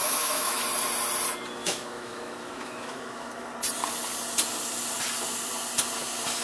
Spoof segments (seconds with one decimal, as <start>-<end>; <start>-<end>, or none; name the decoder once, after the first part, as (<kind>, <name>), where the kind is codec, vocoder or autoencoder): 0.0-0.6 (autoencoder, DAC-VAE); 1.6-3.5